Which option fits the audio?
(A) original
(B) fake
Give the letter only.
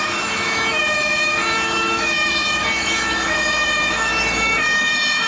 B